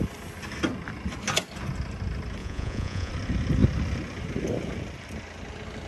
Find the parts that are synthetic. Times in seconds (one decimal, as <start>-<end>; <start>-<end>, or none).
2.4-3.1